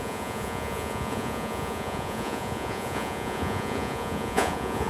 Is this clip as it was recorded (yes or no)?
no